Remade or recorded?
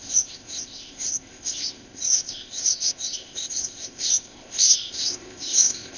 remade